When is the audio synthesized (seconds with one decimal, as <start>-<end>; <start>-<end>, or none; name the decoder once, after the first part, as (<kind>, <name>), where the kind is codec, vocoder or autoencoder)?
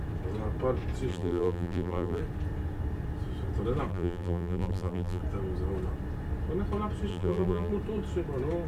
1.1-2.2 (vocoder, BigVGAN v2); 3.9-5.2; 7.1-7.7